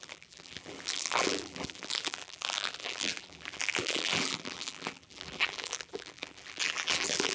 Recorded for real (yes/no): no